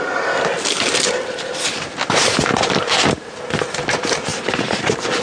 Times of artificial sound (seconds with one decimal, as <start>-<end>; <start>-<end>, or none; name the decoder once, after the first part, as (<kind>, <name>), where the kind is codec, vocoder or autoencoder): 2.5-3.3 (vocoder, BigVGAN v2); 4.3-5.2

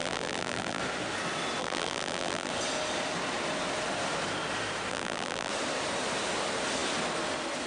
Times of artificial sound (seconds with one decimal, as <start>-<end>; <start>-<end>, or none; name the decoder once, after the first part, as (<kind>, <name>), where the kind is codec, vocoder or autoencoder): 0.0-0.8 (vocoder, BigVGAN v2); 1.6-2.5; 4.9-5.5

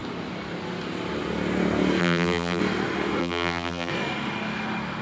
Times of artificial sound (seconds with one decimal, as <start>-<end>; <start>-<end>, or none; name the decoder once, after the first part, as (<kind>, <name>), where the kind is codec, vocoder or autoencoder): 2.0-2.6 (vocoder, BigVGAN v2); 3.2-3.9

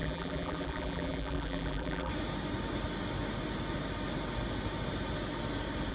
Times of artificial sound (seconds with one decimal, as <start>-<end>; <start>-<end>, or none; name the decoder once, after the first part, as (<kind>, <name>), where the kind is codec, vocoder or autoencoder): 0.0-2.1 (vocoder, BigVGAN v2)

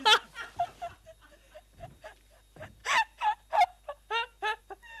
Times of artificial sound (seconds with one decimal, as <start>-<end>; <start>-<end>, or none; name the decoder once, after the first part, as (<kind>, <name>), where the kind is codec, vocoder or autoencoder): none

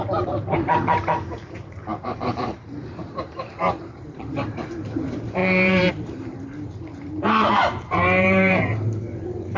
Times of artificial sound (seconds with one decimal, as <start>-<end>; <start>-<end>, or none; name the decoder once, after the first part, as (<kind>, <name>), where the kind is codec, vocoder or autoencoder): 0.0-9.6 (vocoder, BigVGAN v2)

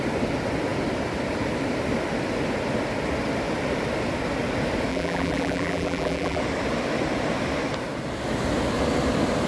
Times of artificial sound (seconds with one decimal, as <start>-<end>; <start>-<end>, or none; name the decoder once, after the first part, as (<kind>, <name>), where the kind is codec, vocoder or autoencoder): 4.9-6.4 (vocoder, BigVGAN v2)